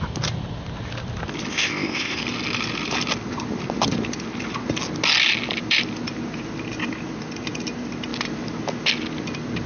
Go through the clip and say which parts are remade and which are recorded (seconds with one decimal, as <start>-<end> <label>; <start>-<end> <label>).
0.0-1.5 recorded; 1.5-2.2 remade; 2.2-9.7 recorded